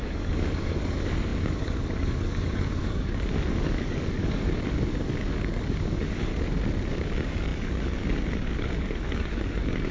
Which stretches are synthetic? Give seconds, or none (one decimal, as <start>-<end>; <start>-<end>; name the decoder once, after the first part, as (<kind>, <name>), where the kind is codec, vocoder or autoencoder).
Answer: 0.0-6.3 (codec, DAC); 6.9-9.9

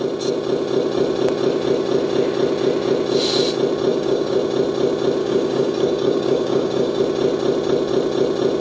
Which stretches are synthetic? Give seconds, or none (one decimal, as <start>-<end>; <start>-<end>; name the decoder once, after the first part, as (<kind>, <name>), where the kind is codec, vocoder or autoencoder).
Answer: 3.9-4.4 (codec, DAC); 5.2-7.0